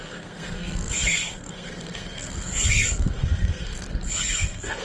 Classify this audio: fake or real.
fake